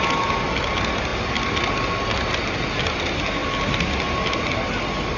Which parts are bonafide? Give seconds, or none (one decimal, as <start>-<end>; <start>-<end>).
0.0-5.2